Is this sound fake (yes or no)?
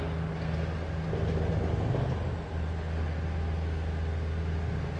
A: no